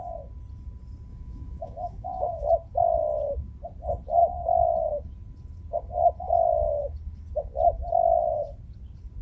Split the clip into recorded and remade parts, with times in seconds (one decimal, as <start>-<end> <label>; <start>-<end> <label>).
0.0-1.1 recorded; 1.1-2.5 remade; 2.5-9.2 recorded